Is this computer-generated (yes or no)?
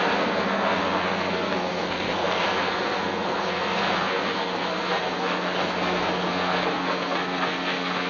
yes